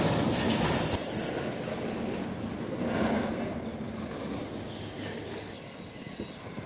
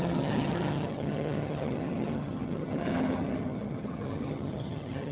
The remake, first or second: second